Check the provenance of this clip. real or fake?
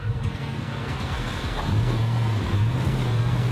fake